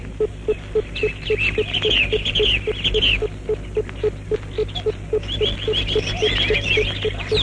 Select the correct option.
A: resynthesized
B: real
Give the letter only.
B